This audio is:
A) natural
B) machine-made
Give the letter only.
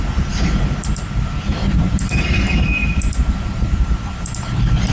B